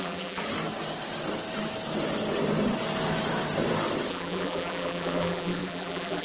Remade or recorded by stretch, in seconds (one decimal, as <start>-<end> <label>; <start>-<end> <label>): 0.0-0.4 remade; 0.4-4.1 recorded; 4.1-6.2 remade